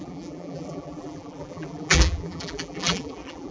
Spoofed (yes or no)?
yes